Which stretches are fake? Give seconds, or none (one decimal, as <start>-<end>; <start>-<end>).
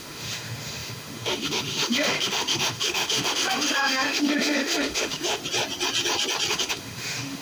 0.0-5.4; 6.5-7.4